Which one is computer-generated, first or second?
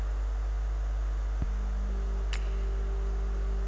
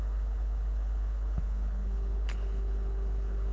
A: second